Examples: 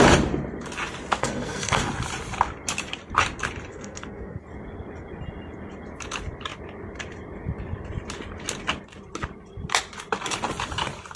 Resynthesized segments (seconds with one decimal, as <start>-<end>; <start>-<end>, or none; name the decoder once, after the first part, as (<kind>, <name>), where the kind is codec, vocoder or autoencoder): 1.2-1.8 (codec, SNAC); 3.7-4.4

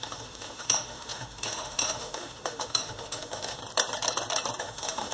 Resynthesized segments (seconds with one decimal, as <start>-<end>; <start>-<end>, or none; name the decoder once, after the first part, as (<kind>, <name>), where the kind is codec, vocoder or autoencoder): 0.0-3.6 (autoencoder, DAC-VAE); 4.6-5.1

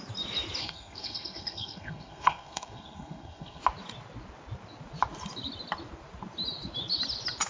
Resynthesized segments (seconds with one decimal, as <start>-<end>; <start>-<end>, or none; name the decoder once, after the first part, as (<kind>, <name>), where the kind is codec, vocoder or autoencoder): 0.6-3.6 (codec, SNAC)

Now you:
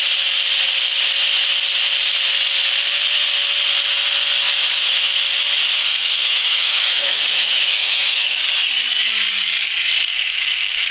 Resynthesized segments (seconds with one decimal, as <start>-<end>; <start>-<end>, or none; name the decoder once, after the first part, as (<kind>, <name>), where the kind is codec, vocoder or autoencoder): 5.9-8.4 (autoencoder, DAC-VAE); 10.1-10.9

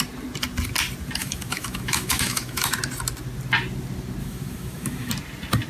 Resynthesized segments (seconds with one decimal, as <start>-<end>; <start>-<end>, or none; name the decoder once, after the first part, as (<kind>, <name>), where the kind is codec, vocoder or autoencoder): 1.2-2.8 (autoencoder, DAC-VAE); 4.2-5.1

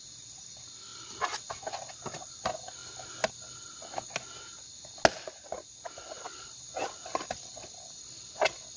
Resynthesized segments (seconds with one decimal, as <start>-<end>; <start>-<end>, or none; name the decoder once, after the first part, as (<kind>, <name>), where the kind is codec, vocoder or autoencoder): none

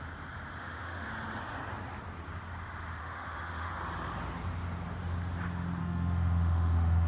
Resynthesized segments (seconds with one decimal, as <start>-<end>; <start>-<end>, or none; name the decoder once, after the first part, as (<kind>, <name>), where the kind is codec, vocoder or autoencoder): 0.6-1.1 (autoencoder, DAC-VAE); 3.0-3.7; 5.8-7.1

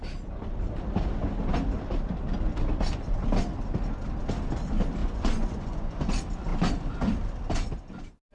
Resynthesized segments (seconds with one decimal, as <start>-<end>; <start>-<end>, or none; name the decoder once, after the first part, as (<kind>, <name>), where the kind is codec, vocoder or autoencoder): 5.0-6.1 (vocoder, Vocos)